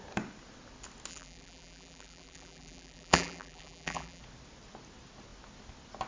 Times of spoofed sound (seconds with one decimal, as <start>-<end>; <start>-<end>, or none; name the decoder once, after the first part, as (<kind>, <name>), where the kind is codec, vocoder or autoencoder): 1.1-4.2 (vocoder, BigVGAN v2)